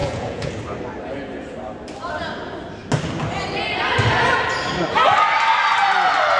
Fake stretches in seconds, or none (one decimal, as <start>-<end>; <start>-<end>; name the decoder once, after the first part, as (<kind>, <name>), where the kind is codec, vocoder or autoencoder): 0.0-0.5 (vocoder, Vocos)